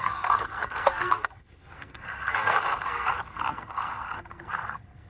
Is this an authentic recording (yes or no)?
no